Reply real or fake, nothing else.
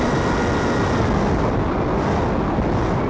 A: real